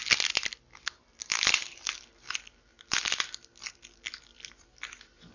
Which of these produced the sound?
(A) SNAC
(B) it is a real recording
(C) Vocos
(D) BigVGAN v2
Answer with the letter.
D